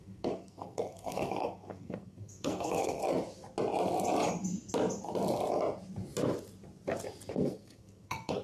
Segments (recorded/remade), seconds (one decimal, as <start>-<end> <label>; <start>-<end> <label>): 0.0-3.0 remade; 3.0-7.3 recorded; 7.3-8.4 remade